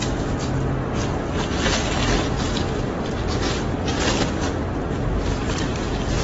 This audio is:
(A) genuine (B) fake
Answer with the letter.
A